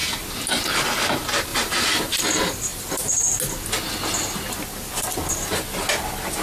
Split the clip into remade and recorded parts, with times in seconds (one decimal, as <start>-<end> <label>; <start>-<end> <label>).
0.0-1.5 recorded; 1.5-2.2 remade; 2.2-6.4 recorded